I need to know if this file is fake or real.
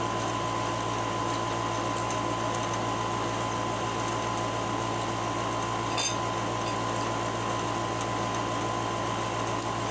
real